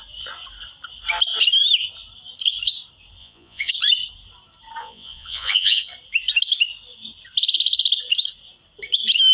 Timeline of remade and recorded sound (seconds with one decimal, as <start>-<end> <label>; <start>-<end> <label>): 0.0-3.2 recorded; 3.2-3.7 remade; 3.7-4.8 recorded; 4.8-5.9 remade; 5.9-9.3 recorded